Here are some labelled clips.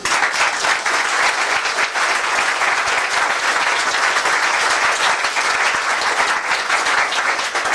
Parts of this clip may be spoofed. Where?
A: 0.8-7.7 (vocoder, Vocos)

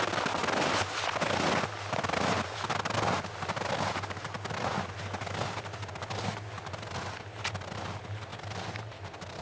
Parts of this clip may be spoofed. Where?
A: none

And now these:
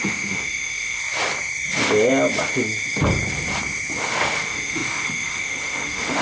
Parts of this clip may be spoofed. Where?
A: 0.0-1.0 (autoencoder, DAC-VAE); 4.0-6.2

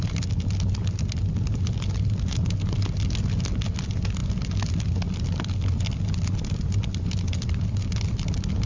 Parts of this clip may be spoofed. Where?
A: none

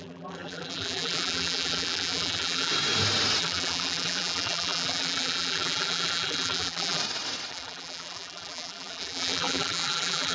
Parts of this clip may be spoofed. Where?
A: 0.0-2.7 (vocoder, BigVGAN v2); 3.4-7.0; 7.5-10.3

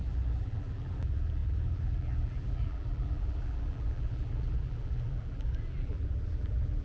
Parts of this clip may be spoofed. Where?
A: 0.0-6.8 (vocoder, BigVGAN v2)